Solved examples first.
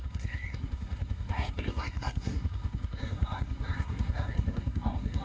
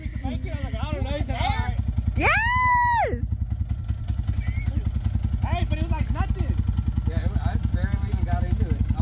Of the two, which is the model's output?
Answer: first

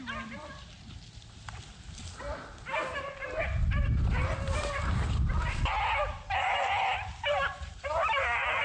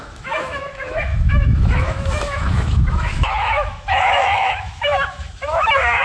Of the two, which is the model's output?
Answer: second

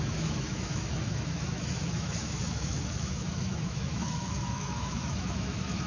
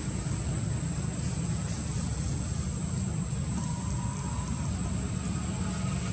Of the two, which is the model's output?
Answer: first